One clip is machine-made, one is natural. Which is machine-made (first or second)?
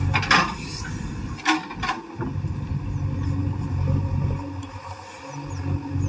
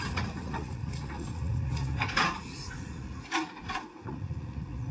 second